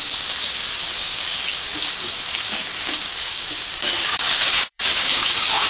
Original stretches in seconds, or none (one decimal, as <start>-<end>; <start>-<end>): none